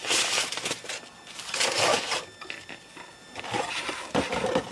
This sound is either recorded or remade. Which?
recorded